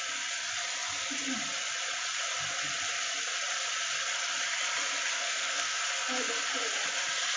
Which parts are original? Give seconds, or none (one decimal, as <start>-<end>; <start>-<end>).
0.0-5.1; 5.8-7.4